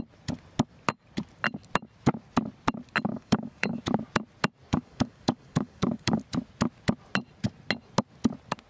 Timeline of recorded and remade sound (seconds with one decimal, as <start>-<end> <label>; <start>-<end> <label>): 0.0-3.1 recorded; 3.1-3.8 remade; 3.8-4.7 recorded; 4.7-6.2 remade; 6.2-8.7 recorded